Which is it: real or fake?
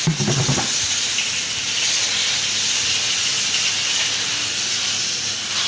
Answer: real